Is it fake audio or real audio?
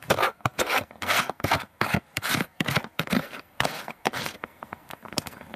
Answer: fake